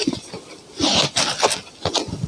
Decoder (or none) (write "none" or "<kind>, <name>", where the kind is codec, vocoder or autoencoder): none